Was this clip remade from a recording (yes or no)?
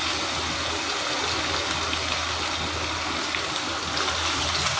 no